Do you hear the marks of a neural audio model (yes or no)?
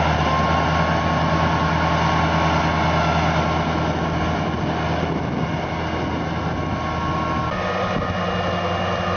no